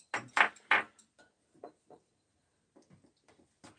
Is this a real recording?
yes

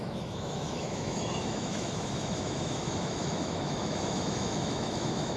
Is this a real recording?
no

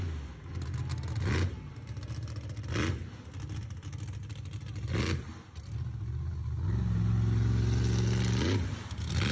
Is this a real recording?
yes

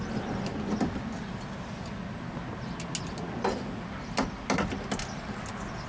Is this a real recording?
yes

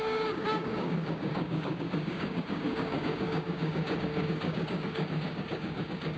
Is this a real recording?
no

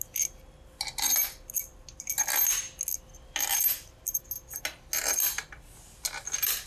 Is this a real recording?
yes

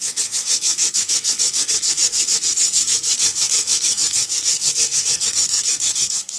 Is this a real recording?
no